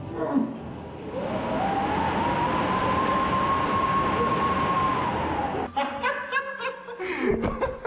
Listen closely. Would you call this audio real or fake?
real